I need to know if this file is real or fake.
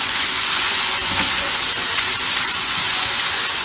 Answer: fake